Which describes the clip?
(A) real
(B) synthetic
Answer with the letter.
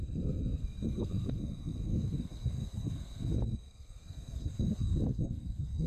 B